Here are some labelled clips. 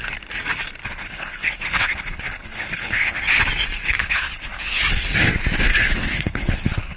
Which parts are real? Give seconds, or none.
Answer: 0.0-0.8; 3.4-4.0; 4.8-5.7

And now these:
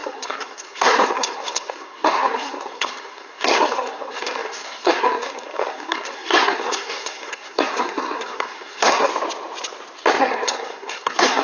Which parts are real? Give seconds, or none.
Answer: 9.1-10.2

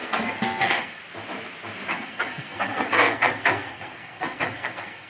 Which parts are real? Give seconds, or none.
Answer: 1.0-1.9